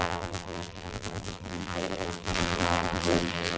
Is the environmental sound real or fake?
fake